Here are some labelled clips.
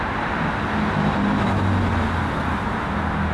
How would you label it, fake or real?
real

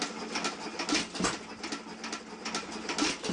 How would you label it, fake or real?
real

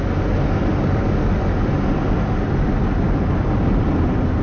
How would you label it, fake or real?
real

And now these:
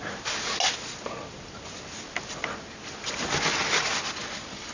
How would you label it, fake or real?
real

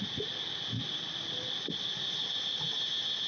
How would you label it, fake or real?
real